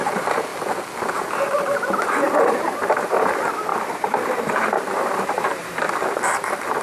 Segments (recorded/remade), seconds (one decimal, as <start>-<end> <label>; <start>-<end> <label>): 0.0-0.5 remade; 0.5-1.1 recorded; 1.1-6.8 remade